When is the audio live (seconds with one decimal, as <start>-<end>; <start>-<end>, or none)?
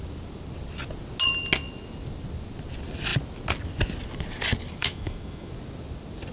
0.0-4.8; 5.5-6.3